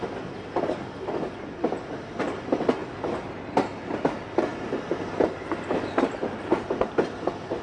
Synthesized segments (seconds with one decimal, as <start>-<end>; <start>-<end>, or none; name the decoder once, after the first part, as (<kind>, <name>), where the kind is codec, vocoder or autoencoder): none